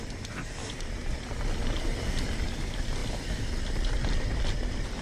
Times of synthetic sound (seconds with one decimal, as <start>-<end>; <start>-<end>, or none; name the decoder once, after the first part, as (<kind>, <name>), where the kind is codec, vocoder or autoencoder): none